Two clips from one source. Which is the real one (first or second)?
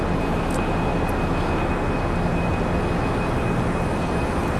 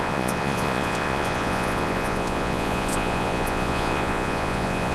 first